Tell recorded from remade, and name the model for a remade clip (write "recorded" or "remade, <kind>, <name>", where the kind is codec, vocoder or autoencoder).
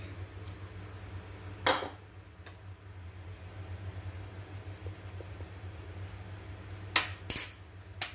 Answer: recorded